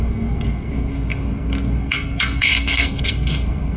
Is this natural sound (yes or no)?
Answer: no